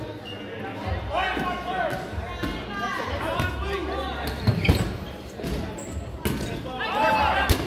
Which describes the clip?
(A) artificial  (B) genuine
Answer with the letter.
B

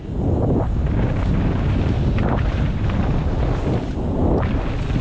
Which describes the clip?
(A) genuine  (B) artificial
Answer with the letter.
A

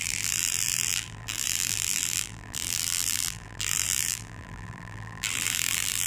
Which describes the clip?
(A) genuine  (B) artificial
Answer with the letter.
B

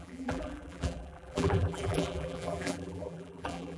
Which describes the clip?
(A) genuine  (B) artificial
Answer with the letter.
B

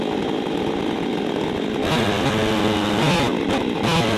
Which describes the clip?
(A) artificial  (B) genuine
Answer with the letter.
B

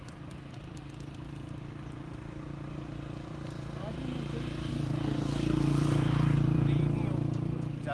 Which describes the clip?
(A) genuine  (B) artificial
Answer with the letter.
B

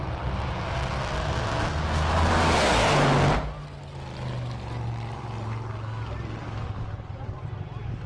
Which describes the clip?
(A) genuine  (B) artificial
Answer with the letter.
A